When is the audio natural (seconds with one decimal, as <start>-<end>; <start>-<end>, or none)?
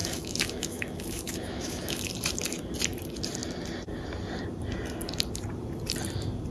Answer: 2.1-6.5